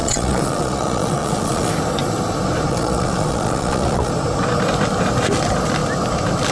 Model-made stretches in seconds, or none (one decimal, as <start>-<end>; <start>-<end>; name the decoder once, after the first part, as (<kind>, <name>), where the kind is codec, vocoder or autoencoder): 0.0-1.7 (vocoder, Vocos); 2.7-4.1